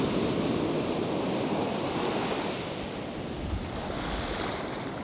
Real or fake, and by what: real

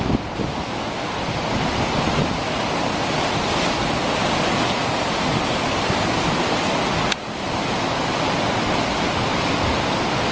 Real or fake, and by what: real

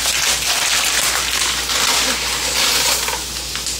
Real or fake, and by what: real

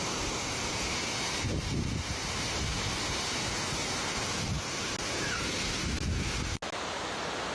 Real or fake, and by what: real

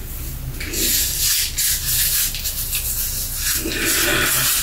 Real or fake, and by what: real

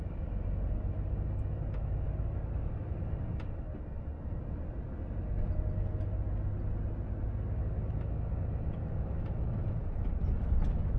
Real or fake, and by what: real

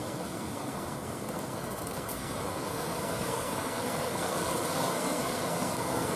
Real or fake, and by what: fake, codec, SNAC